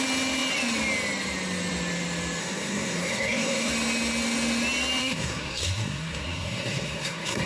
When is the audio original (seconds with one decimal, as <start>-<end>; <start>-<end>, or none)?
0.0-2.4; 3.7-5.0